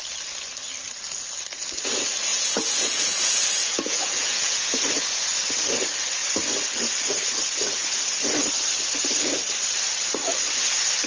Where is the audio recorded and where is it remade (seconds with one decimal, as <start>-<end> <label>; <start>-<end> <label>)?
0.0-2.3 recorded; 2.3-4.8 remade; 4.8-7.7 recorded; 7.7-8.2 remade; 8.2-11.1 recorded